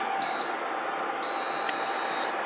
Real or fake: real